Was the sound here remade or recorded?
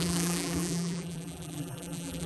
remade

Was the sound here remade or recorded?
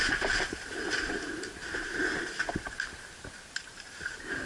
remade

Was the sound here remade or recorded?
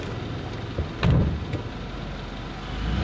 recorded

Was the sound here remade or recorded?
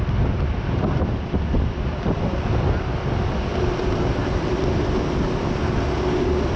recorded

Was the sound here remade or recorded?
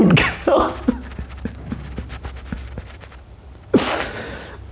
recorded